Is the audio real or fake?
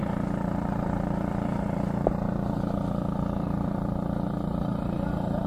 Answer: fake